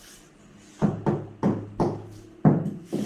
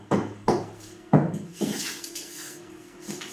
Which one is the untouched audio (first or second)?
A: first